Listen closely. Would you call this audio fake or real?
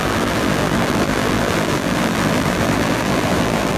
fake